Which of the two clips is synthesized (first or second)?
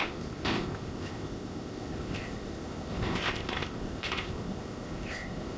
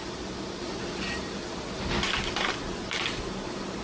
first